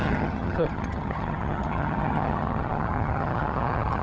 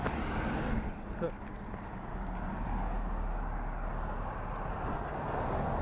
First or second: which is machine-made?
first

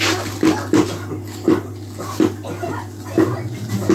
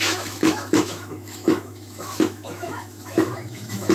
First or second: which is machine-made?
second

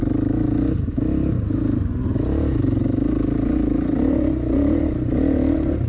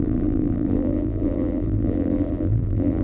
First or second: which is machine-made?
second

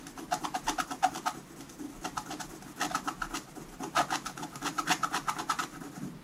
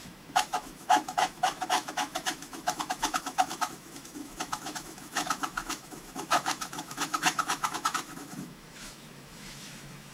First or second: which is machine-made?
second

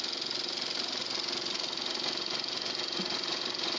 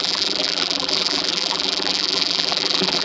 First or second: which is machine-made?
second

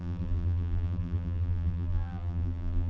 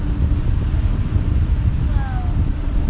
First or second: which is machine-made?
first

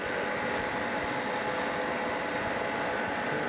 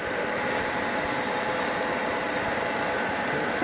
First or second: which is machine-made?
second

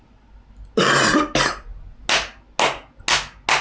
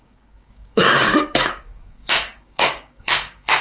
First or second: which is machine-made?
second